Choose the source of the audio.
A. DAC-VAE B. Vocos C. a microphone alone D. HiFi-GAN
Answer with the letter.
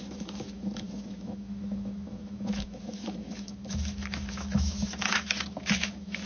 A